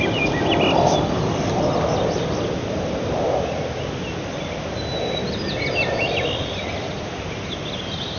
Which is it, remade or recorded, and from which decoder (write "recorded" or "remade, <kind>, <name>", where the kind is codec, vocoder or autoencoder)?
recorded